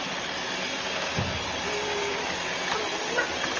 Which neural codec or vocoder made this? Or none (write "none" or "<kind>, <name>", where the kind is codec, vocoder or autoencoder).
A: none